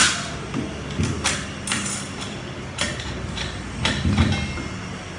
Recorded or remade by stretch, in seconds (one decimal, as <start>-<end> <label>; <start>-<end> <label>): 0.0-5.2 recorded